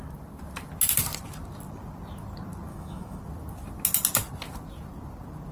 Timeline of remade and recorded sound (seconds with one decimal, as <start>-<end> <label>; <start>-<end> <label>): 0.0-2.7 recorded; 2.7-3.2 remade; 3.2-5.5 recorded